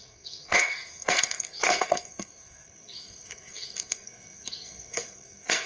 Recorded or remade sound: remade